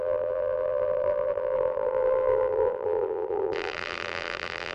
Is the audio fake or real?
fake